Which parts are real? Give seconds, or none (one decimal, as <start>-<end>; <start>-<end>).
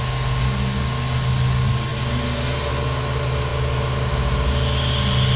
0.0-5.4